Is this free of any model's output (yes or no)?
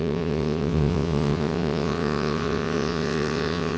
no